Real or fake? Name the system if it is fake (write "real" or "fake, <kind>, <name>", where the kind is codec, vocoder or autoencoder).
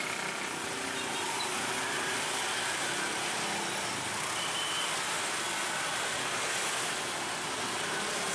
real